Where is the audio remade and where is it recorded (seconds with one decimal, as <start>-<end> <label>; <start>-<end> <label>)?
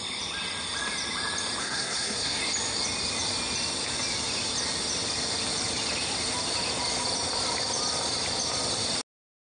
0.0-1.6 recorded; 1.6-2.4 remade; 2.4-9.4 recorded